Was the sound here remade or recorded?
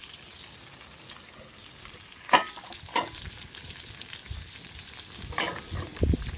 recorded